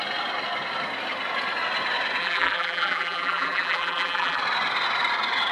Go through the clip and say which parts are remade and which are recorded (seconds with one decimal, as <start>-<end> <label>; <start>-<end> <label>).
0.0-2.2 recorded; 2.2-4.4 remade; 4.4-5.5 recorded